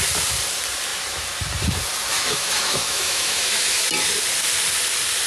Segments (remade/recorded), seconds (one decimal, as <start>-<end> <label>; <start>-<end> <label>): 0.0-2.1 recorded; 2.1-3.9 remade; 3.9-5.3 recorded